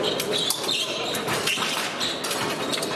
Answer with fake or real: real